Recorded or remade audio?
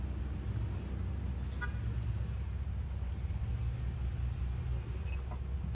recorded